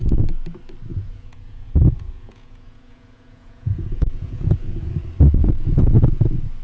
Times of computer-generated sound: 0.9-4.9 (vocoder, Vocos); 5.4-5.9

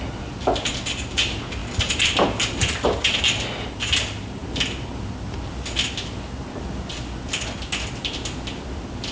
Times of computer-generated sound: none

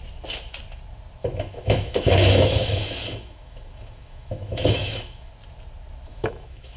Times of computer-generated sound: 1.2-5.3 (autoencoder, DAC-VAE); 6.1-6.8